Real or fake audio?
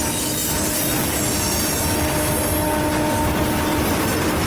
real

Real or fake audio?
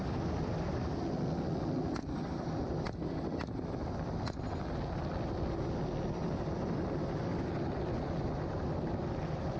real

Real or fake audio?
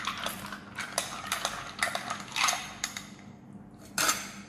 real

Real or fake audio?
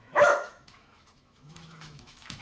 fake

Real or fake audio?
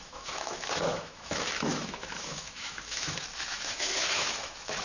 fake